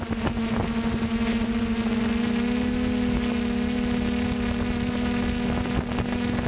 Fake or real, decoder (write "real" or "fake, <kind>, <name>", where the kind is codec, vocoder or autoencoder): real